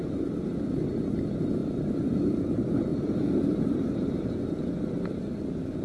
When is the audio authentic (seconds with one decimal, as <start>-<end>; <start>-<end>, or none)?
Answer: 0.6-1.6; 2.4-2.9; 4.4-5.8